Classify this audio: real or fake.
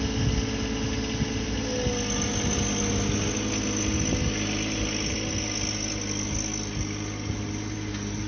real